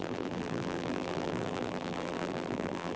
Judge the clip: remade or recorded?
remade